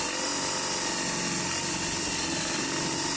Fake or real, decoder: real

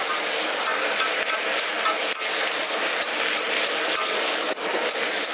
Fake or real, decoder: fake, vocoder, BigVGAN v2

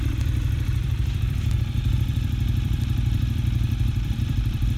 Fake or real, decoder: fake, vocoder, BigVGAN v2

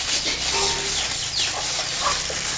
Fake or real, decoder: real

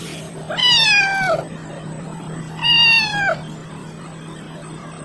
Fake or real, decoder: real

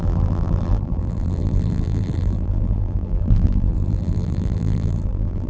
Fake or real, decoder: fake, vocoder, BigVGAN v2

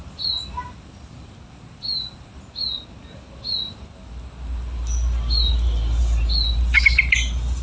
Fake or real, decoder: real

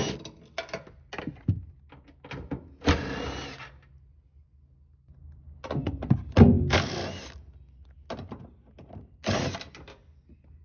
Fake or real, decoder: real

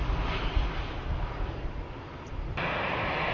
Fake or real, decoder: real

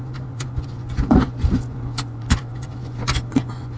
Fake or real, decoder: fake, vocoder, Vocos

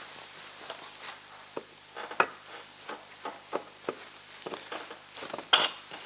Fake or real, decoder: real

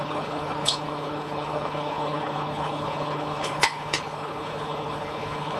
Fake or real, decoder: fake, codec, HILCodec